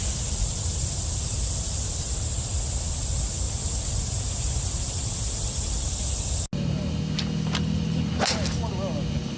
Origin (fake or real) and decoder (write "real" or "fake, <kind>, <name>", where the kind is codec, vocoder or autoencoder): real